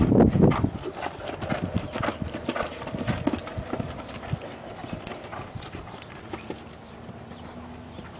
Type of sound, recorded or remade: recorded